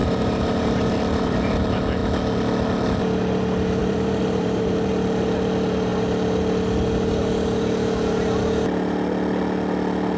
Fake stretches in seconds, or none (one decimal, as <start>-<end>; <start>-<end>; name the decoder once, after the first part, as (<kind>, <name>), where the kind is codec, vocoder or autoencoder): 0.0-1.6 (vocoder, BigVGAN v2); 3.8-4.9